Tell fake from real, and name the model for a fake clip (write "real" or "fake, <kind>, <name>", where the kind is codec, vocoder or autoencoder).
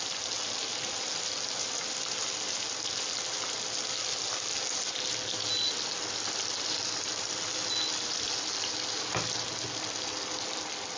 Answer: real